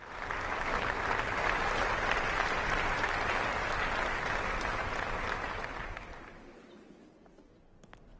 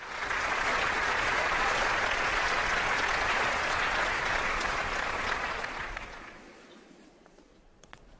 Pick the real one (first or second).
first